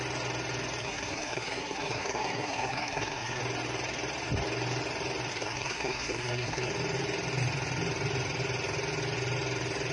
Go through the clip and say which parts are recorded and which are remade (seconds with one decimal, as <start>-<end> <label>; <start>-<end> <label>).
0.0-0.8 recorded; 0.8-3.4 remade; 3.4-5.3 recorded; 5.3-6.7 remade; 6.7-9.9 recorded